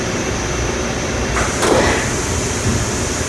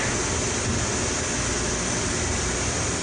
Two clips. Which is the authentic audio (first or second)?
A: second